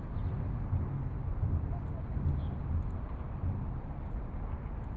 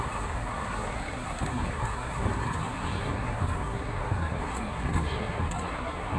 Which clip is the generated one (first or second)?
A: second